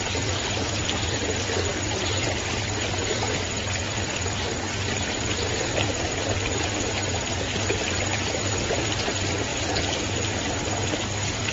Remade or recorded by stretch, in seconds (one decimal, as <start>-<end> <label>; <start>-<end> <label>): 0.0-11.5 recorded